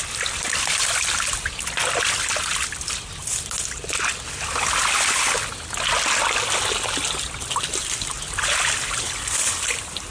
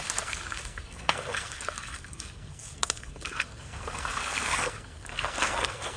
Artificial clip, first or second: second